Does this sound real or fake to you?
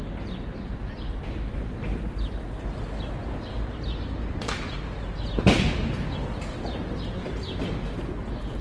real